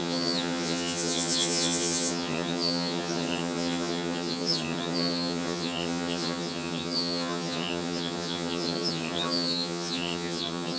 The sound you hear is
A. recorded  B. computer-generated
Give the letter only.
B